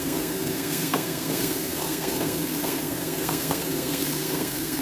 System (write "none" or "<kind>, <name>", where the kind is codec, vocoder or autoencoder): codec, SNAC